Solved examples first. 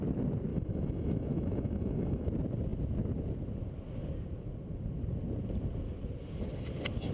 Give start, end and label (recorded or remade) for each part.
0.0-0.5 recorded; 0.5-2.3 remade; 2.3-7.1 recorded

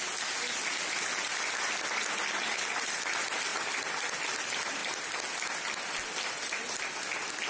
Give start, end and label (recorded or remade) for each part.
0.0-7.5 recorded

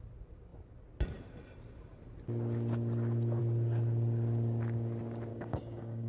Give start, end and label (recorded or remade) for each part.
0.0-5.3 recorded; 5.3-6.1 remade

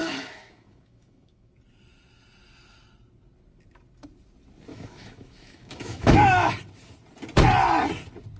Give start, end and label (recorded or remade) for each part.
0.0-1.5 remade; 1.5-4.7 recorded; 4.7-6.5 remade; 6.5-8.4 recorded

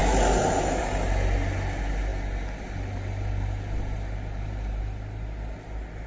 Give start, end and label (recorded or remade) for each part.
0.0-6.1 recorded